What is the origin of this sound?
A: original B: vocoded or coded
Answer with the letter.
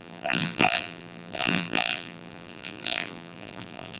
B